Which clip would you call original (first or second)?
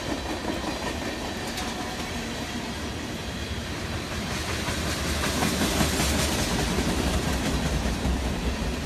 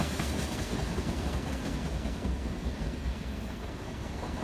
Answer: first